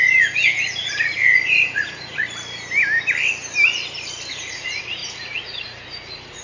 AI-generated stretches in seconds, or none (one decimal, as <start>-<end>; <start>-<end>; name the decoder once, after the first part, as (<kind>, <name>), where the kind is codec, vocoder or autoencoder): 0.0-2.2 (vocoder, Vocos); 4.3-6.4

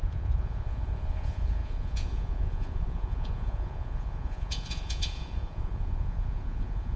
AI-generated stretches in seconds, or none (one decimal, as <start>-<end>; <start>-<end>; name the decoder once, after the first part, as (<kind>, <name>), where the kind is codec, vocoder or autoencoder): 0.0-7.0 (vocoder, Vocos)

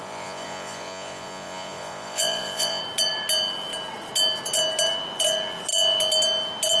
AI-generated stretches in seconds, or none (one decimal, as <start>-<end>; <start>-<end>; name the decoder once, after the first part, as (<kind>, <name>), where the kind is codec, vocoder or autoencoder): 0.0-2.8 (vocoder, Vocos)

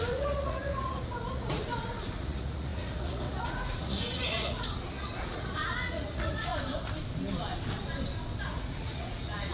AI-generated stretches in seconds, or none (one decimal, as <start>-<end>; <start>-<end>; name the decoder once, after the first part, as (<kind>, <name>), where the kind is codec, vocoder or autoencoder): 0.0-6.5 (vocoder, Vocos); 8.4-9.5